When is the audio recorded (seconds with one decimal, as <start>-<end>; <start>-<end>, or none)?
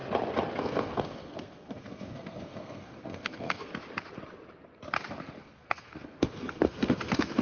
0.0-0.6; 3.7-5.4